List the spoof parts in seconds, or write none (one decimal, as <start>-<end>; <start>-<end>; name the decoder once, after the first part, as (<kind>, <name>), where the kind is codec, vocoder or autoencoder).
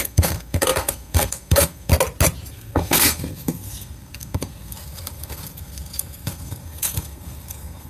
0.0-1.9 (codec, SNAC); 2.5-7.9